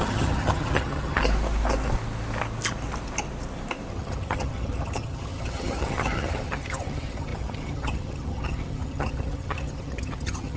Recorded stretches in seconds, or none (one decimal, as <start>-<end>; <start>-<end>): 1.2-3.9